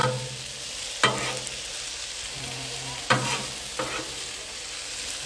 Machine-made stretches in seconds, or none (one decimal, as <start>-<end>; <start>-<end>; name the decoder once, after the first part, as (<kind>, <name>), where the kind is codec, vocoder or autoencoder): none